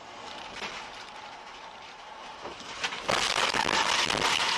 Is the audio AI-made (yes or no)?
no